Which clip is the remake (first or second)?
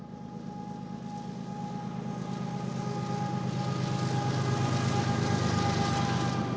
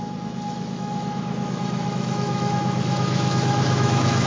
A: second